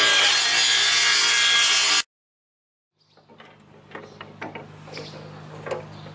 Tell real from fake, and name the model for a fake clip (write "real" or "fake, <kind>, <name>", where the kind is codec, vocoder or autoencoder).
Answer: real